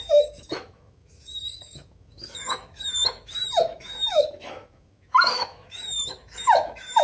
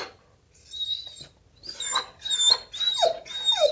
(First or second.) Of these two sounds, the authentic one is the second